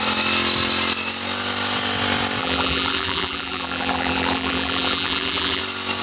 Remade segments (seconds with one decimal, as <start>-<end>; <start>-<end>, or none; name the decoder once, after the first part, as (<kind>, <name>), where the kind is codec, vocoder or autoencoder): 2.4-5.6 (vocoder, BigVGAN v2)